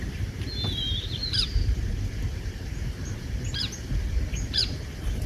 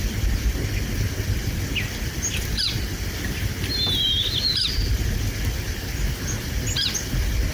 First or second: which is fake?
first